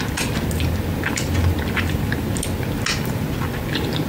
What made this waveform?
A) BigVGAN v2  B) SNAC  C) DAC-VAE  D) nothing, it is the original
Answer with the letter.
D